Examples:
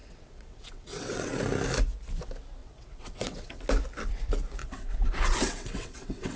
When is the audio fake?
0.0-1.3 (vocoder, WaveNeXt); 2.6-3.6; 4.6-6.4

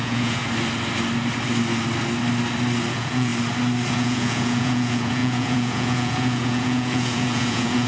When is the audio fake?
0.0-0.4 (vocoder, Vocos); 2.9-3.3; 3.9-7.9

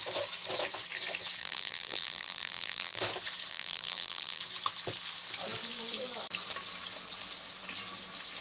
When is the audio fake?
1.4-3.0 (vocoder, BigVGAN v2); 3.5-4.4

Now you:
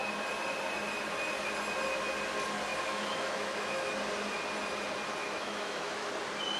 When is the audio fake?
2.7-3.9 (autoencoder, DAC-VAE); 5.2-6.1

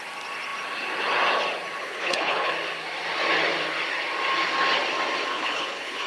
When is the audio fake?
1.8-2.5 (codec, HILCodec); 5.3-6.1